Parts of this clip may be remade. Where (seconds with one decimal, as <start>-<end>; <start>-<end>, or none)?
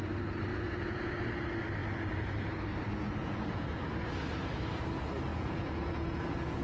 0.5-1.1; 3.2-3.8; 5.3-6.6